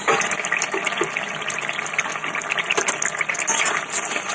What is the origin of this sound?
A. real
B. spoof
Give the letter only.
A